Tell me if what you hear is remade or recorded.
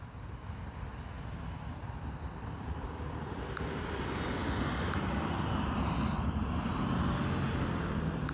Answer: recorded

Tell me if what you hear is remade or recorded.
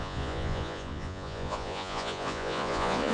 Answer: remade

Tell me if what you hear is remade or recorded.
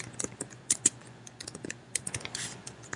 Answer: remade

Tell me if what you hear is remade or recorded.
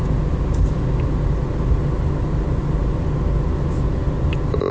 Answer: recorded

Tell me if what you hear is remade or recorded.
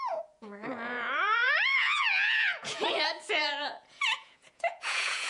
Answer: remade